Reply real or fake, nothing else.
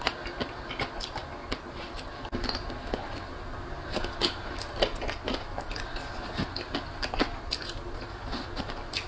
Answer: real